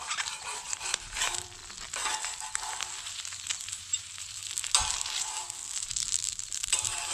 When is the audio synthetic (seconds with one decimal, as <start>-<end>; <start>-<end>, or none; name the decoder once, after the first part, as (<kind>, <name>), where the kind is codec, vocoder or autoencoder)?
0.0-1.6 (vocoder, BigVGAN v2); 3.7-4.4; 5.8-7.1